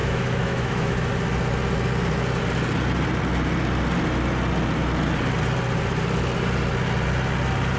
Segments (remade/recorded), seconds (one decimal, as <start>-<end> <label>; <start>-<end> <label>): 0.0-1.1 remade; 1.1-7.8 recorded